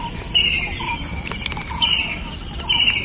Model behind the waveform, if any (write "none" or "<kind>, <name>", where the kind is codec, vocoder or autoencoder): none